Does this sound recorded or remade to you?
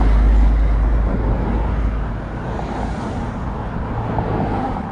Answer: recorded